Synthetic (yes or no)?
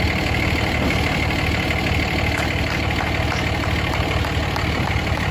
no